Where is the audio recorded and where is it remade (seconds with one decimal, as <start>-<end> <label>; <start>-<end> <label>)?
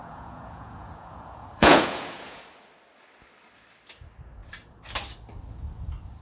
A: 0.0-2.4 remade; 2.4-6.2 recorded